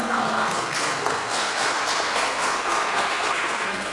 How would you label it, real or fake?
fake